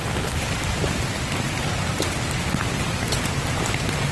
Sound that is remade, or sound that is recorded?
remade